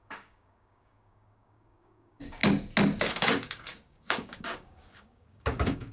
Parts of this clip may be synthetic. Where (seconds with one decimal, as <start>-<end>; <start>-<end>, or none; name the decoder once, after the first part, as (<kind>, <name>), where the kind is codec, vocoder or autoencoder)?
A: 0.0-2.4 (codec, DAC); 3.1-5.9